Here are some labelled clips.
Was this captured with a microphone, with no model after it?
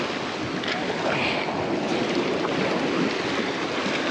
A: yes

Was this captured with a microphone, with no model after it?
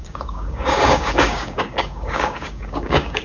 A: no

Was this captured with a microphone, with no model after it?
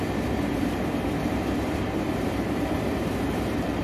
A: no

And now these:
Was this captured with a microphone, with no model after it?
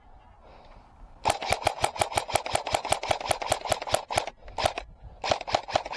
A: yes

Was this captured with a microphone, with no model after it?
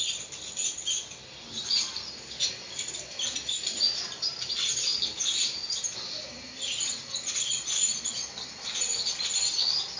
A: yes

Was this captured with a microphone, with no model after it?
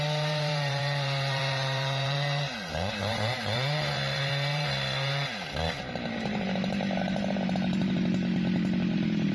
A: no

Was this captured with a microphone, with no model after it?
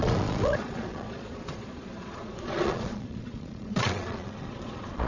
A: no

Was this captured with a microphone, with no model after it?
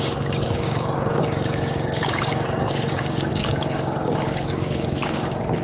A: no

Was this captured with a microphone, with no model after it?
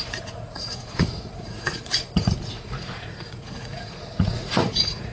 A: no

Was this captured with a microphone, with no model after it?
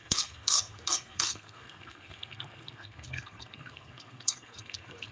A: no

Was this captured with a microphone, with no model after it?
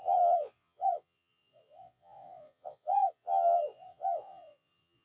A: no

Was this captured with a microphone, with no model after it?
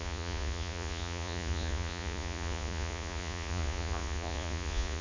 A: no